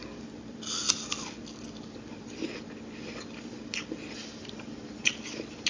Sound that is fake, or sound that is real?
real